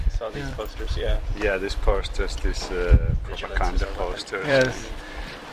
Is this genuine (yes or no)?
no